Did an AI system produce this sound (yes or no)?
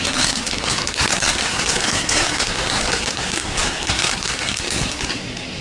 yes